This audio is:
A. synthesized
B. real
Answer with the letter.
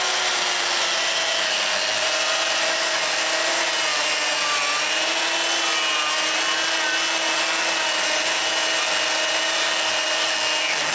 B